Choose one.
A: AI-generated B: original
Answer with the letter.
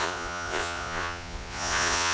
A